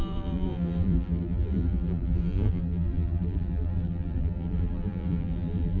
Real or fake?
fake